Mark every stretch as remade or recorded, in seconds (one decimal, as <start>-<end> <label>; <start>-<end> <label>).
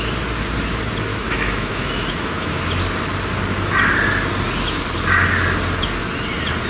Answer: 0.0-1.1 recorded; 1.1-2.6 remade; 2.6-6.7 recorded